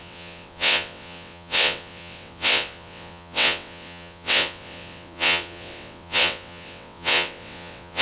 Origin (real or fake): fake